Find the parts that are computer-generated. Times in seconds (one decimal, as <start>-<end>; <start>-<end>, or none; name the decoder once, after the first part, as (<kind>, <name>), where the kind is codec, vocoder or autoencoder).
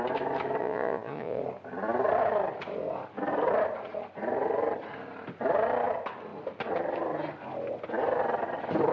0.6-1.4 (vocoder, Vocos)